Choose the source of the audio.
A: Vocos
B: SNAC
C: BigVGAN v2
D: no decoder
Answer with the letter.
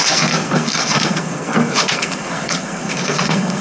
B